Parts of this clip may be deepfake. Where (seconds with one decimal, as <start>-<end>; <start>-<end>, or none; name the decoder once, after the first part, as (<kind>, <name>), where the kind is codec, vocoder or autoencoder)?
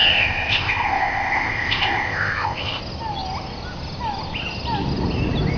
0.0-2.8 (codec, ZipCodec)